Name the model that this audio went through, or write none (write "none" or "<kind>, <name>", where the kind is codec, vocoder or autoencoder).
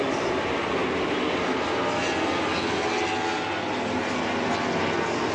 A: none